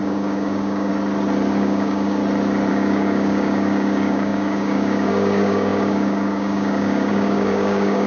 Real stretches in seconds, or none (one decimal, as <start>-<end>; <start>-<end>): 0.9-1.5; 2.2-2.7